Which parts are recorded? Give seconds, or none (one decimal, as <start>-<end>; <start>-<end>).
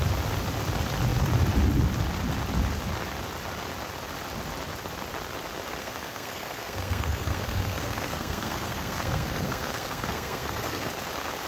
0.0-5.8; 10.9-11.5